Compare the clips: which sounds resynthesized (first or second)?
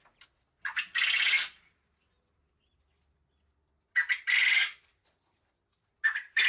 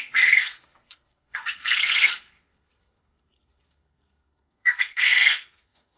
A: second